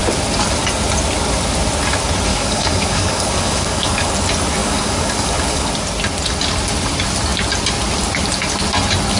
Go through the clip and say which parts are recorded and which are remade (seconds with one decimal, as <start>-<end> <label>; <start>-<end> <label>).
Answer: 0.0-2.3 recorded; 2.3-4.1 remade; 4.1-4.6 recorded; 4.6-5.7 remade; 5.7-9.2 recorded

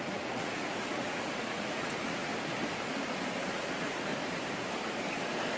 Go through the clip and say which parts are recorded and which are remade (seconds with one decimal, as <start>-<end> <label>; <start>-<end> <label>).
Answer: 0.0-2.3 remade; 2.3-3.5 recorded; 3.5-4.1 remade; 4.1-5.6 recorded

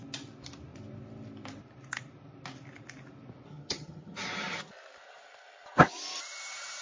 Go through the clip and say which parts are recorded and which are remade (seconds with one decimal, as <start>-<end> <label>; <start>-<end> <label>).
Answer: 0.0-3.5 recorded; 3.5-4.6 remade; 4.6-6.8 recorded

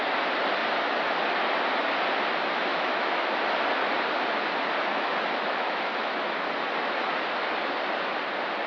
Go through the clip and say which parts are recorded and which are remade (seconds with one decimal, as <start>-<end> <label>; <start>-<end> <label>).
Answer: 0.0-2.7 recorded; 2.7-3.3 remade; 3.3-4.9 recorded; 4.9-6.5 remade; 6.5-8.7 recorded

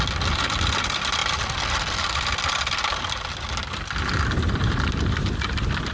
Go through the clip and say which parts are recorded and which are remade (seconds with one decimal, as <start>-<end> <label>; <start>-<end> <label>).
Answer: 0.0-5.9 recorded

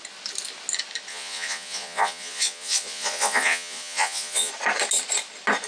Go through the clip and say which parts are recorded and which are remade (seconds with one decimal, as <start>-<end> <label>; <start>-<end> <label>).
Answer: 0.0-1.1 recorded; 1.1-4.5 remade; 4.5-5.7 recorded

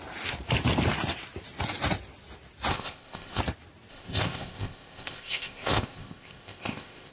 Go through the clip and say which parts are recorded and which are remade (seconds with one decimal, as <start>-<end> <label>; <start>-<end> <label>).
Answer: 0.0-2.7 recorded; 2.7-3.4 remade; 3.4-3.9 recorded; 3.9-7.1 remade

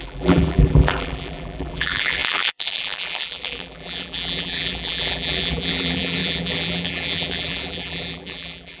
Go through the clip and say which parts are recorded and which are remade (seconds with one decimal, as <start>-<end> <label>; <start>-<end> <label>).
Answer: 0.0-8.8 remade